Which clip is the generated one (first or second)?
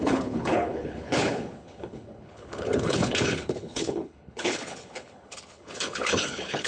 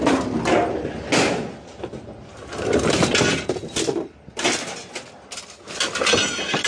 first